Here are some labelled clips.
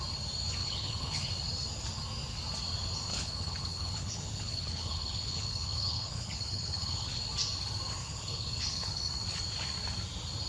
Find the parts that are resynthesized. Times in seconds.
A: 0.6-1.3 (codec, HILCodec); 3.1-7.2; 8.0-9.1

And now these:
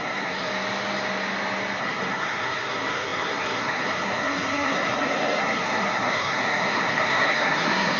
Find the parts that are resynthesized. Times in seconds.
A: 0.0-0.5 (codec, SNAC); 1.8-8.0

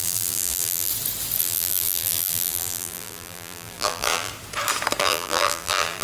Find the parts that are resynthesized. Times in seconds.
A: 0.0-0.9 (vocoder, BigVGAN v2); 1.4-4.3; 5.0-6.0

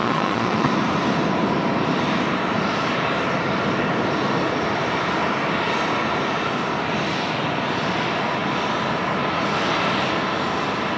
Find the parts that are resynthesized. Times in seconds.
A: 0.0-0.7 (vocoder, Vocos)